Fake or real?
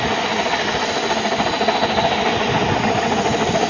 real